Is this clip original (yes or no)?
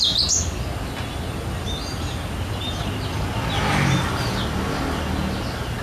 yes